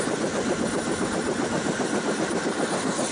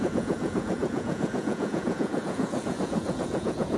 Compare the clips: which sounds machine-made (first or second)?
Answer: second